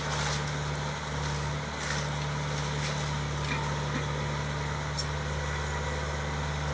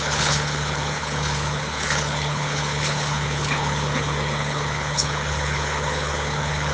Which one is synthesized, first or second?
second